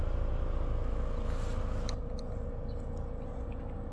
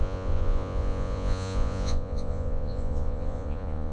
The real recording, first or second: first